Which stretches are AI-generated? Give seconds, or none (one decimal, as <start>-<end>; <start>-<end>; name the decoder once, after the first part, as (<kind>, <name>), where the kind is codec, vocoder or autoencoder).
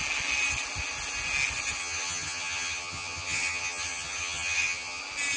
1.8-5.0 (vocoder, HiFi-GAN)